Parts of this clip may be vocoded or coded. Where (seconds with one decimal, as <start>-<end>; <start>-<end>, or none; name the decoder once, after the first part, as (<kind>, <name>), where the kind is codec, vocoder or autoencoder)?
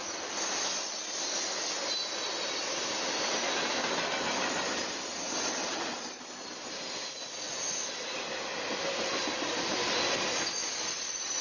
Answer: none